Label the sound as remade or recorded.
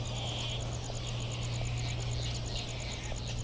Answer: recorded